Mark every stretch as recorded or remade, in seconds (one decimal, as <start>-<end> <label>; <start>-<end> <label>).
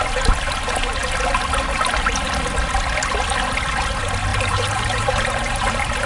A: 0.0-4.3 recorded; 4.3-6.1 remade